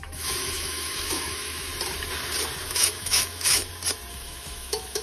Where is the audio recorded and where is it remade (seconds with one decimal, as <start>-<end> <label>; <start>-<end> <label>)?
0.0-1.7 remade; 1.7-2.6 recorded; 2.6-3.6 remade; 3.6-4.1 recorded; 4.1-5.0 remade